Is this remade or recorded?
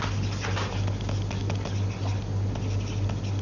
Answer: recorded